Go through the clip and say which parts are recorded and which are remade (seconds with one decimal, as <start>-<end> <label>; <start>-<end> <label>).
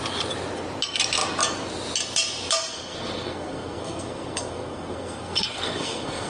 0.0-2.7 recorded; 2.7-6.3 remade